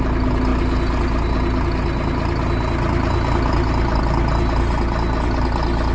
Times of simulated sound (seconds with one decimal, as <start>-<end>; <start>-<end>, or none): none